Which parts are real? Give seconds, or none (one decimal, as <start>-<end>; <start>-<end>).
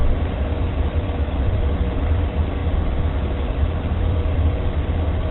2.6-3.8